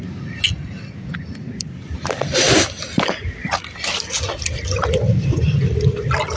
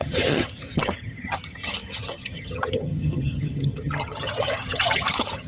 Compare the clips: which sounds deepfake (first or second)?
second